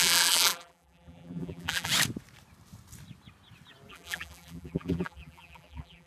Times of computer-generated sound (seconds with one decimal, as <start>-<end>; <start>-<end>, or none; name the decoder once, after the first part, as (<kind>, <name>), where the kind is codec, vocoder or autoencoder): 0.0-1.9 (vocoder, BigVGAN v2); 3.9-6.1